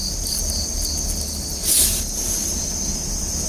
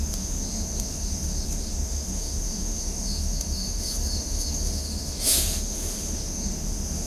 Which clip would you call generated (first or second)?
second